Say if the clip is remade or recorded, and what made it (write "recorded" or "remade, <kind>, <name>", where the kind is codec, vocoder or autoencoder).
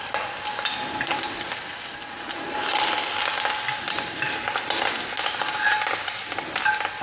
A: recorded